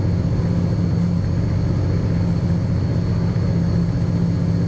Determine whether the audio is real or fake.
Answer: real